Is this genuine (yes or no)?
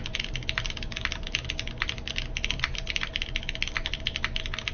yes